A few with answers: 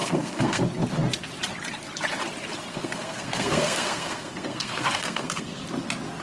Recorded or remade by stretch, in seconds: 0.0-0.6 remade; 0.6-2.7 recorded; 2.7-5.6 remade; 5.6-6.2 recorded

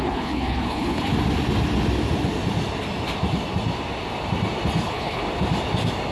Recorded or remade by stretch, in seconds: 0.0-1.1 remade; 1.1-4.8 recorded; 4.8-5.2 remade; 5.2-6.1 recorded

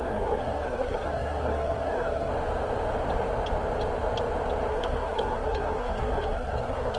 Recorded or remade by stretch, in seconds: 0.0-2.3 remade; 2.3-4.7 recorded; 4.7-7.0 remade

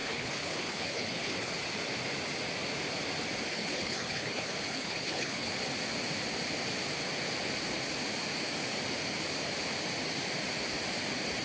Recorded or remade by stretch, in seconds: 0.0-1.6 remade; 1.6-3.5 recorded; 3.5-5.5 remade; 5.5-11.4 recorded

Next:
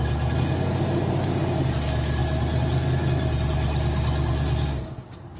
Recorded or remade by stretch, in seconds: 0.0-5.4 recorded

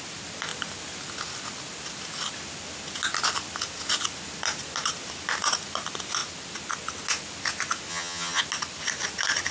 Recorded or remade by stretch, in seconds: 0.0-7.9 recorded; 7.9-8.4 remade; 8.4-9.5 recorded